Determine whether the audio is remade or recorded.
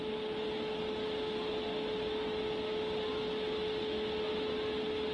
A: recorded